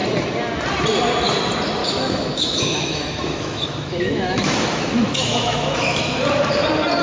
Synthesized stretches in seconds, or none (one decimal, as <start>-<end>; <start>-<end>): 1.8-6.0